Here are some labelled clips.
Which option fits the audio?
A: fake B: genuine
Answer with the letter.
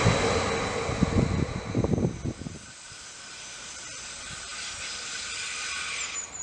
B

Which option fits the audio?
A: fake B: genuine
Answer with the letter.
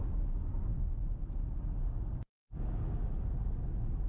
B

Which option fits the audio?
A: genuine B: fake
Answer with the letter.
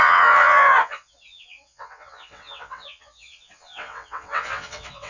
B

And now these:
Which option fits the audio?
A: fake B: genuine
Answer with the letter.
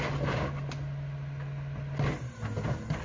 B